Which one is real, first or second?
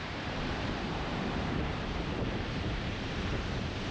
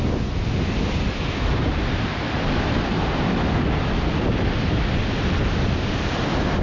second